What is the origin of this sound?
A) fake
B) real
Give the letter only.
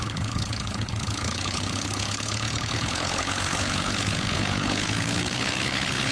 A